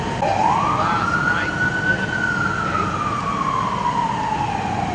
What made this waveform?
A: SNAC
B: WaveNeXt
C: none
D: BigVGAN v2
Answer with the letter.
C